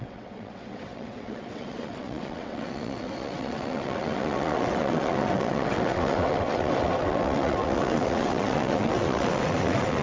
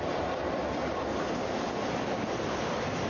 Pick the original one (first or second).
second